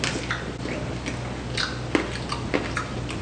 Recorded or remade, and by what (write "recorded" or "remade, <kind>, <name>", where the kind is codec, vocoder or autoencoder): recorded